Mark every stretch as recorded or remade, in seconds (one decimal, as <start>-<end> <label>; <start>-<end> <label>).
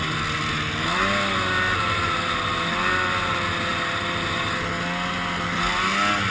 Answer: 0.0-6.3 recorded